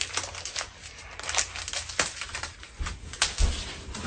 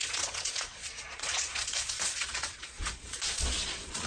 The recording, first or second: first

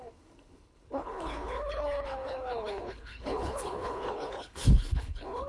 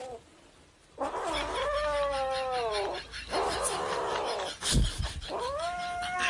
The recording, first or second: second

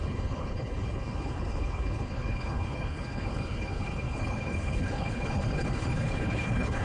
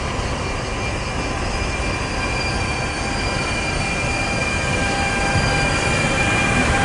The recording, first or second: second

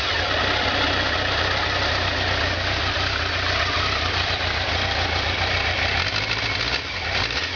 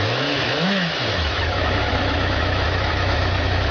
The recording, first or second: first